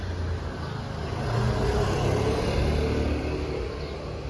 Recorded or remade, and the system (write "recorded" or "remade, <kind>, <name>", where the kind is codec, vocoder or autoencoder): recorded